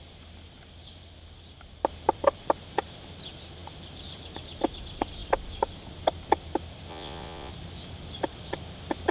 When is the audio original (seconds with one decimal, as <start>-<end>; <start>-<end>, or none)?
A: 0.0-6.9; 7.5-9.1